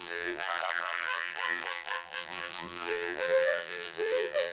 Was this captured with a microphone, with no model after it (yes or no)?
no